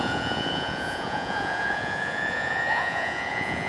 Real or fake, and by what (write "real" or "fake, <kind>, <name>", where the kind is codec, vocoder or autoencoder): fake, vocoder, Vocos